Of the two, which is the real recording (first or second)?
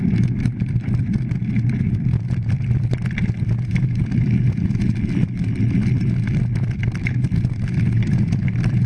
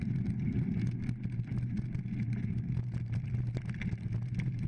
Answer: second